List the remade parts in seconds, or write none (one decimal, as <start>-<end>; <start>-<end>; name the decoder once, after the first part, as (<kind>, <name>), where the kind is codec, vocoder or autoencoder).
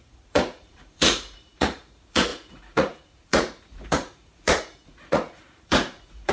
0.0-6.3 (vocoder, Vocos)